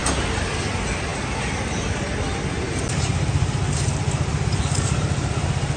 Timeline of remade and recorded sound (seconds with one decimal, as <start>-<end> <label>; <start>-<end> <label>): 0.0-5.8 recorded